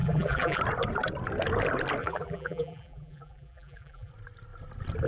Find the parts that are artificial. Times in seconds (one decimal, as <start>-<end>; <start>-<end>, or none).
0.0-0.6; 2.0-4.1